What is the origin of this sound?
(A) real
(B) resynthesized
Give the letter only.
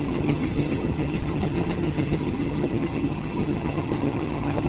B